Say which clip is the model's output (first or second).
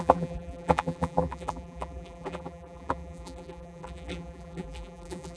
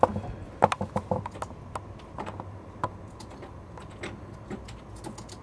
first